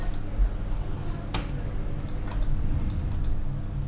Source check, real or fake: real